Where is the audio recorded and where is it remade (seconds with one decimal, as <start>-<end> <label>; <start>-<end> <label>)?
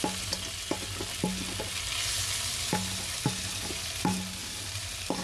0.0-4.4 recorded; 4.4-5.2 remade